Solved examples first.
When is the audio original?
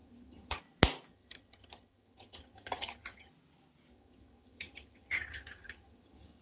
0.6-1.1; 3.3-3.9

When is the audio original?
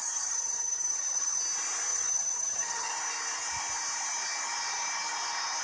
1.4-1.9; 2.9-5.6